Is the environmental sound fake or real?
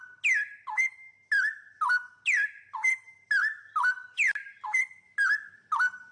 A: real